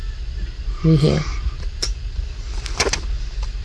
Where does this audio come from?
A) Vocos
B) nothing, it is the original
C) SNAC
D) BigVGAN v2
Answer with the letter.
B